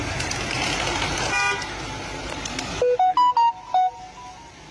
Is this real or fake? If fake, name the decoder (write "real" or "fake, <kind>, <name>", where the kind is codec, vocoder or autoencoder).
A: real